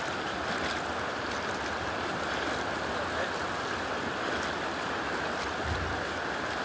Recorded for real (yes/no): yes